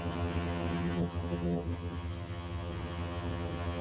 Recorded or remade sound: remade